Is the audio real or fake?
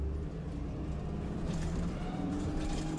fake